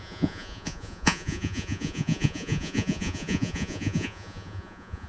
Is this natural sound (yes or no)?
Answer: no